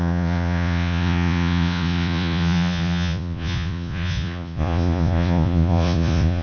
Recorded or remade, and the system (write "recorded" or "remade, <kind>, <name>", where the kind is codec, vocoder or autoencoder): remade, vocoder, Vocos